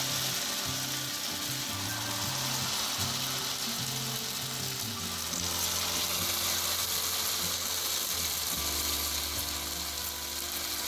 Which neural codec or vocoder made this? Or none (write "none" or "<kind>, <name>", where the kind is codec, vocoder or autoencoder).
none